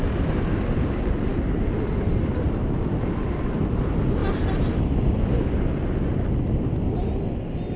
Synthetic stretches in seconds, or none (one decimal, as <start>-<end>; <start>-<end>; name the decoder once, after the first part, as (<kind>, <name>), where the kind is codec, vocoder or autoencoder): none